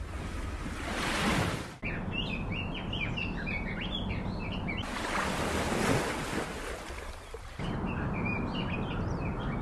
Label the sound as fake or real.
real